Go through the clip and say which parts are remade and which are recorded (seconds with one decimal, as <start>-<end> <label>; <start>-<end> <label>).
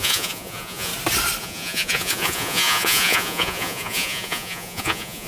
0.0-0.9 remade; 0.9-1.4 recorded; 1.4-5.3 remade